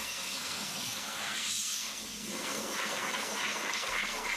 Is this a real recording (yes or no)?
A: no